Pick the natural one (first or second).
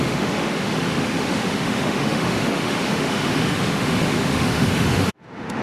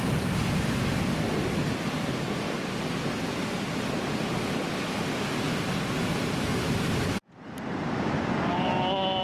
second